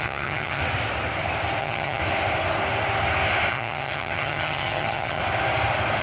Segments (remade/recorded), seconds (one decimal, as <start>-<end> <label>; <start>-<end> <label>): 0.0-0.6 remade; 0.6-1.6 recorded; 1.6-2.0 remade; 2.0-3.5 recorded; 3.5-5.2 remade; 5.2-6.0 recorded